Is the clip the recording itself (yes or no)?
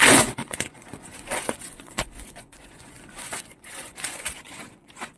no